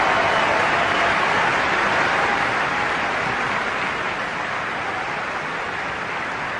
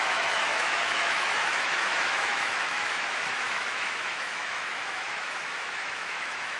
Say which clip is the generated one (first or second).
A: second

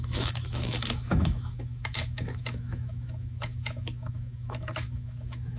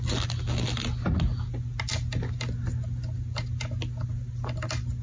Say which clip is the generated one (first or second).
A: first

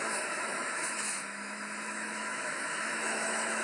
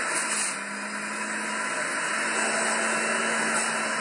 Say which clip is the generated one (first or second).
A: first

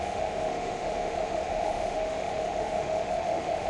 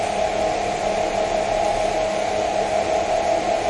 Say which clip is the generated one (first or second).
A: first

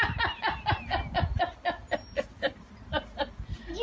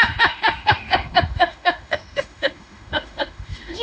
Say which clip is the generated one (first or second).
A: second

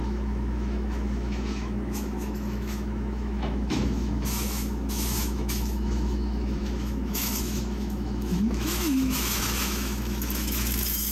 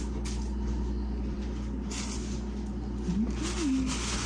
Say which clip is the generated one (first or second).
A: first